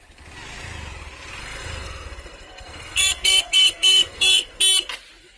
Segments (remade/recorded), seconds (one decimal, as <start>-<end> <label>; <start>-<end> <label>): 0.0-1.4 recorded; 1.4-4.6 remade; 4.6-5.4 recorded